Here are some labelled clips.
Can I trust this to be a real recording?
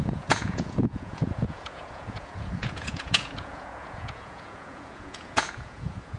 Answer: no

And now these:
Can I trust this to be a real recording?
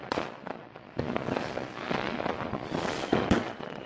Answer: no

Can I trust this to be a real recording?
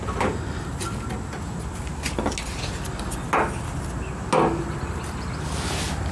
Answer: yes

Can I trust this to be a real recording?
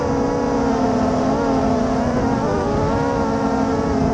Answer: yes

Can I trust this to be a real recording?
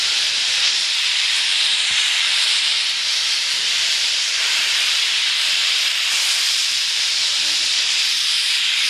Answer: no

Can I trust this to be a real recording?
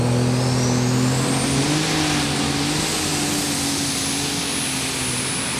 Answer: yes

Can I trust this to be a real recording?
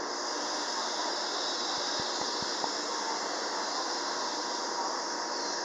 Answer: yes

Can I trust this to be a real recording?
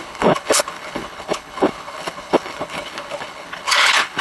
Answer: no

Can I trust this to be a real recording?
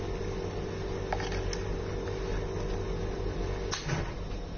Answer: yes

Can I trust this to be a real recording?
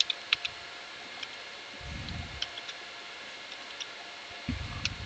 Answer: yes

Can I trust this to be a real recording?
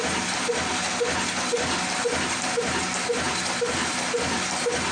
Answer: yes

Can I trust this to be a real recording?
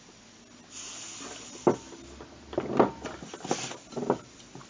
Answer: yes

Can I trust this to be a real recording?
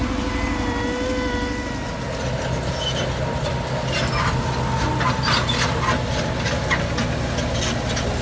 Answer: yes